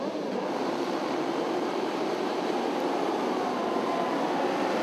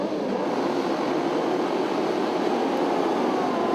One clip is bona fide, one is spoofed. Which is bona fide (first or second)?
second